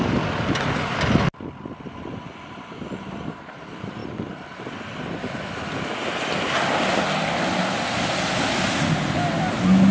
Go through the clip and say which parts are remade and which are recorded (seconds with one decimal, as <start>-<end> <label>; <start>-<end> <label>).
0.0-9.9 recorded